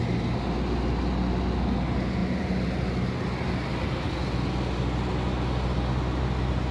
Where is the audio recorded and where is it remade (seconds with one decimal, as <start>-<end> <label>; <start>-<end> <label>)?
0.0-6.7 recorded